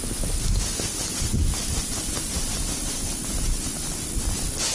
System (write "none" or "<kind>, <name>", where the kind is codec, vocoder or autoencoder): none